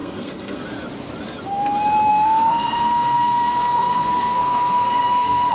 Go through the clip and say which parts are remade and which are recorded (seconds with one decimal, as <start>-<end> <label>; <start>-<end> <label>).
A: 0.0-0.6 remade; 0.6-2.1 recorded; 2.1-5.5 remade